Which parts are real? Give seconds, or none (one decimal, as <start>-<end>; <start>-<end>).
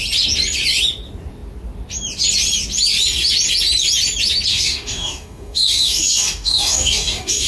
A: 0.0-4.5